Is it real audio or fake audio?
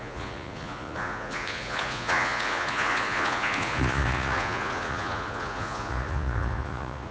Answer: fake